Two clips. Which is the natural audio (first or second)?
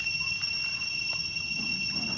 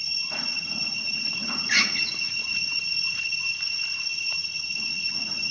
first